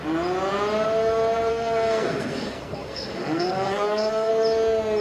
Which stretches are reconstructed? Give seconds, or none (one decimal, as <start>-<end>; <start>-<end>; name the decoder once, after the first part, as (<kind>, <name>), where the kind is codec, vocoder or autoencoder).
1.5-4.3 (codec, SNAC)